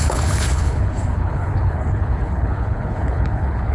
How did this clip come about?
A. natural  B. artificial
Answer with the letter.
B